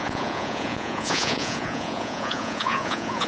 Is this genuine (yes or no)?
no